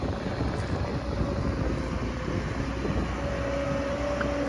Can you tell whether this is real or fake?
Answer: real